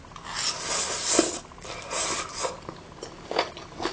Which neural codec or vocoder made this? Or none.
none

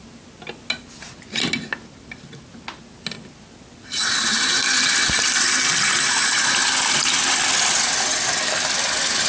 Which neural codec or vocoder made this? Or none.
none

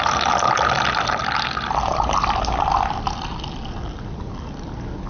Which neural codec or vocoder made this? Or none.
none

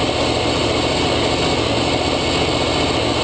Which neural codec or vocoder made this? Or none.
none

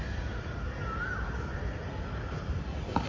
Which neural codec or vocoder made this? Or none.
none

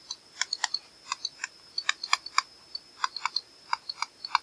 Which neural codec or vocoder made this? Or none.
vocoder, BigVGAN v2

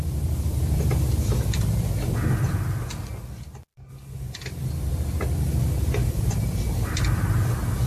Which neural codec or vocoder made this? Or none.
none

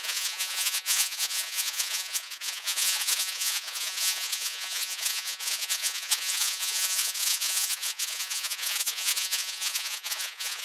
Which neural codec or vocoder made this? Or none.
vocoder, Vocos